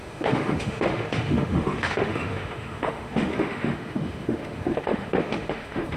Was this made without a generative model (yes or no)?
no